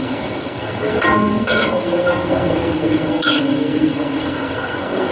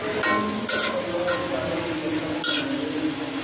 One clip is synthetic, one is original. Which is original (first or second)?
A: second